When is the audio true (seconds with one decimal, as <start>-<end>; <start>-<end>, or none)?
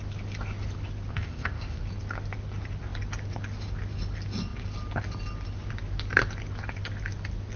0.0-1.1; 1.8-7.6